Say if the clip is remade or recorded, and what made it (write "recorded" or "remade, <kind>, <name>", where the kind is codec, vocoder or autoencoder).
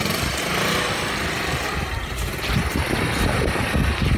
recorded